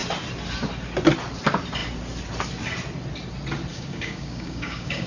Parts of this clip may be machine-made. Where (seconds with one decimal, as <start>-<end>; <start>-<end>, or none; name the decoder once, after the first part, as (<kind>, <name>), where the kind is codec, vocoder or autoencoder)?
3.7-5.1 (codec, DAC)